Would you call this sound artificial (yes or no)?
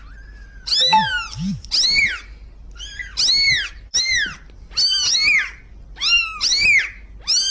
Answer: no